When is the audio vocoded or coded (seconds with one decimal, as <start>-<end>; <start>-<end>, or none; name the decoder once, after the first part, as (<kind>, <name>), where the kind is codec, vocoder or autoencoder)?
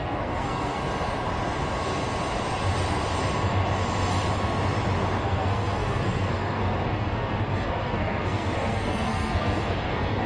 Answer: 0.0-0.8 (codec, SNAC); 5.2-10.3